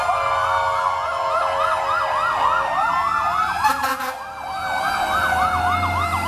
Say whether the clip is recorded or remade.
recorded